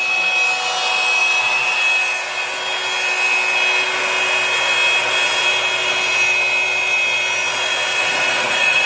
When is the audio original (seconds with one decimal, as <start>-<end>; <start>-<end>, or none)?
0.0-7.9